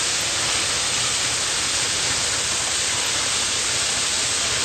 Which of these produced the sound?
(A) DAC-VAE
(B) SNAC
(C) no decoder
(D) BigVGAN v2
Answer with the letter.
C